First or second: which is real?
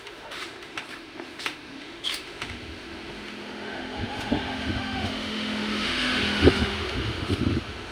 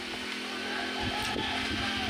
second